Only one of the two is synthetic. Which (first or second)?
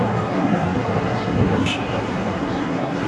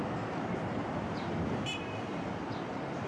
first